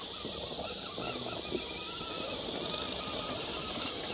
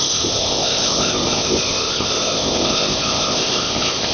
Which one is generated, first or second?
second